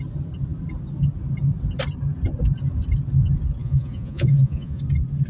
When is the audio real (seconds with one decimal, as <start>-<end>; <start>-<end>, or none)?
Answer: 0.0-3.6; 4.8-5.3